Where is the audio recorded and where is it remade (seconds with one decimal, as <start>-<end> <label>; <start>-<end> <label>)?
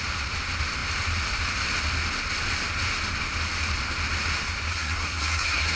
0.0-4.7 recorded; 4.7-5.8 remade